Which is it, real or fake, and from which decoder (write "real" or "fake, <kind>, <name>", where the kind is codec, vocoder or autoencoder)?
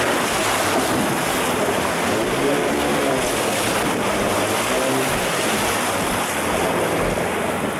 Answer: real